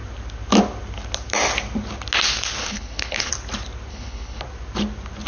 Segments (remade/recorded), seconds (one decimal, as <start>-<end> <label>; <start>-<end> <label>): 0.0-2.6 recorded; 2.6-3.3 remade; 3.3-3.9 recorded; 3.9-4.4 remade; 4.4-5.3 recorded